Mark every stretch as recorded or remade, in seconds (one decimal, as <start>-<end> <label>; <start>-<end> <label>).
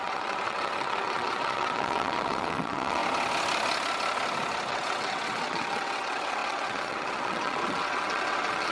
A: 0.0-3.0 remade; 3.0-4.7 recorded; 4.7-8.7 remade